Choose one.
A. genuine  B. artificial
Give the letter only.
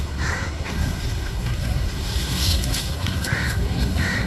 B